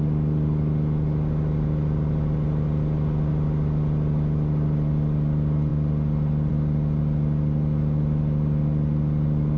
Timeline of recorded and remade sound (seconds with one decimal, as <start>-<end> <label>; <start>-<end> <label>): 0.0-9.6 recorded